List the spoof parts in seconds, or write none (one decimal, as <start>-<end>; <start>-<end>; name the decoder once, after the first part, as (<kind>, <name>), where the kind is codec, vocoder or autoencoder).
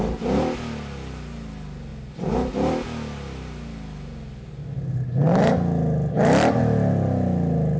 none